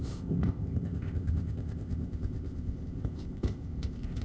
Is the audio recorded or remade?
remade